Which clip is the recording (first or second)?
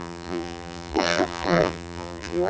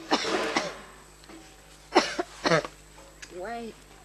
second